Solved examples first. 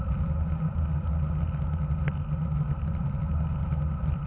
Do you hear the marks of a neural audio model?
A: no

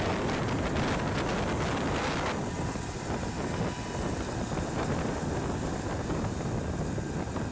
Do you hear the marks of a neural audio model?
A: no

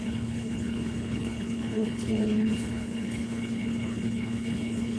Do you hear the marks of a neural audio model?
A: yes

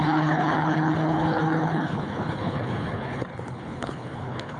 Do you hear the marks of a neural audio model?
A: yes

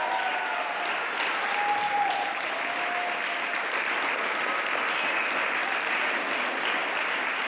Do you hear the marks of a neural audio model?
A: no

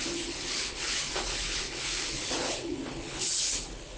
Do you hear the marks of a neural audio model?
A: yes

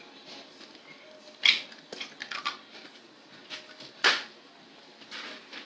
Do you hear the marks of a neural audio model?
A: no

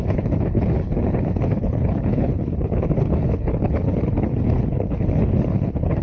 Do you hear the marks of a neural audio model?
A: yes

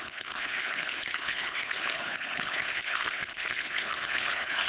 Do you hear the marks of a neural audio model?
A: yes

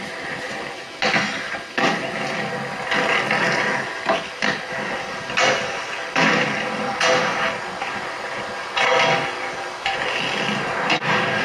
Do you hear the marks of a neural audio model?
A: no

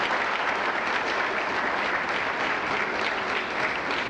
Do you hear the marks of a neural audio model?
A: no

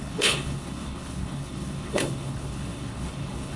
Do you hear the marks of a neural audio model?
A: yes